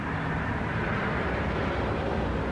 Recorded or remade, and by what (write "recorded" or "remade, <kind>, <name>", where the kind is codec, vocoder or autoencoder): recorded